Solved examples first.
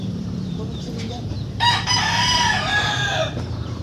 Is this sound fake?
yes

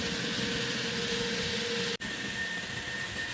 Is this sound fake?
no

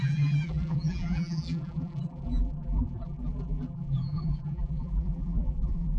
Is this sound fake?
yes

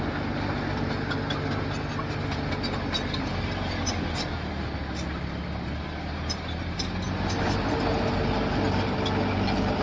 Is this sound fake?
no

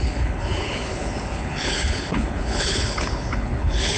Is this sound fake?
yes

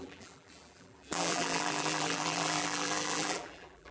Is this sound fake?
yes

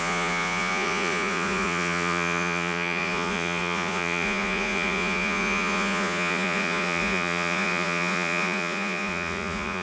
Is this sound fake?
yes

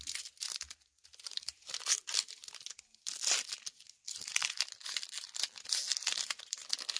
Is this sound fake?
no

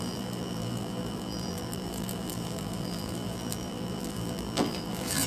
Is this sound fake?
yes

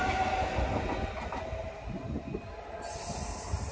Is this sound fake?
no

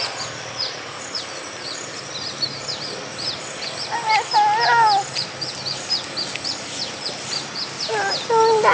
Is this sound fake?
no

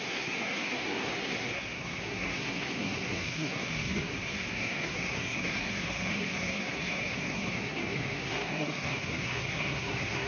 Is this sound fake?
yes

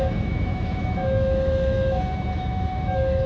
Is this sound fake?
yes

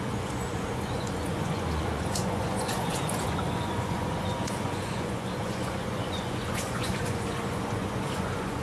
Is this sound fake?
yes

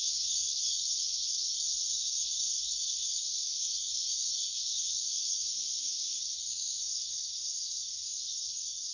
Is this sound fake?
yes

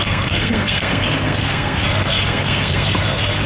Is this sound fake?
yes